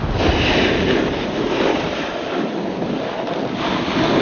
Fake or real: real